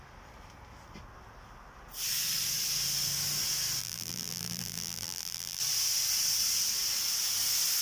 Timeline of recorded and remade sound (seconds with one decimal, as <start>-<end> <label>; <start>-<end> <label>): 0.0-3.8 recorded; 3.8-5.6 remade; 5.6-7.8 recorded

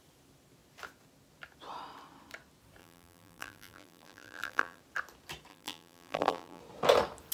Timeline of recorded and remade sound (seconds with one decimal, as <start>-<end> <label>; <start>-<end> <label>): 0.0-2.8 recorded; 2.8-4.8 remade; 4.8-5.5 recorded; 5.5-6.6 remade; 6.6-7.3 recorded

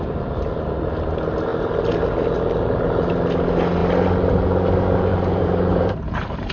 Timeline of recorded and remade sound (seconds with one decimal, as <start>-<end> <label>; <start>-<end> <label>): 0.0-5.1 recorded; 5.1-6.5 remade

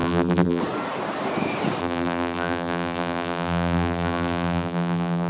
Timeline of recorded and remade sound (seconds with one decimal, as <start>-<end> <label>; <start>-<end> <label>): 0.0-0.6 remade; 0.6-1.8 recorded; 1.8-5.3 remade

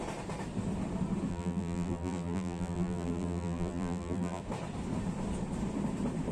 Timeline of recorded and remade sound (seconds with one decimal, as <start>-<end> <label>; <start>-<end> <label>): 0.0-1.3 recorded; 1.3-4.4 remade; 4.4-6.3 recorded

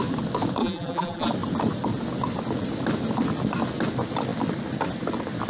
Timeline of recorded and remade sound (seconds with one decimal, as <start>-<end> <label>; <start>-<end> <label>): 0.0-0.6 recorded; 0.6-1.3 remade; 1.3-5.5 recorded